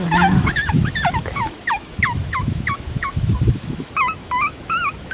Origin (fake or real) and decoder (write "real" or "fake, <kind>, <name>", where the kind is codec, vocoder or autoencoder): fake, autoencoder, DAC-VAE